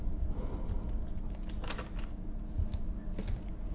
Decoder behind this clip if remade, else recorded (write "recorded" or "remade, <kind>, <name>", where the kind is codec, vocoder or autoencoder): recorded